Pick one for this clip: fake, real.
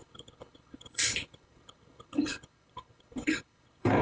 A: fake